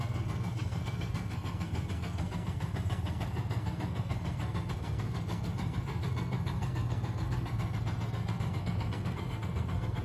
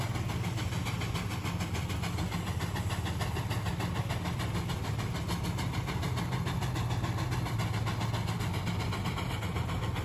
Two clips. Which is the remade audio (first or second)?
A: first